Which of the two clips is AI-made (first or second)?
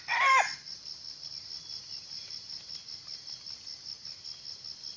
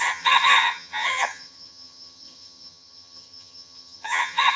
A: second